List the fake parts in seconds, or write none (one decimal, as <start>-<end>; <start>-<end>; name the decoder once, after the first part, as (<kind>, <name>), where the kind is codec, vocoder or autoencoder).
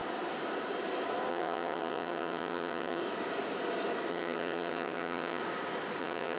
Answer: 1.3-3.0 (vocoder, HiFi-GAN); 4.1-5.4; 6.0-6.4